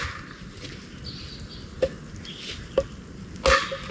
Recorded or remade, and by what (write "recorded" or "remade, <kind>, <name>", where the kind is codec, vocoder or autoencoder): recorded